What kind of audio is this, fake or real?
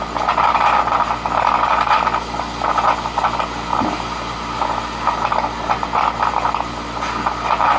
real